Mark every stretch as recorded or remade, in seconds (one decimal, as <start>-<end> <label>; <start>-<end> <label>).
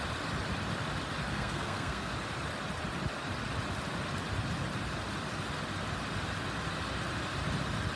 0.0-1.3 recorded; 1.3-2.1 remade; 2.1-8.0 recorded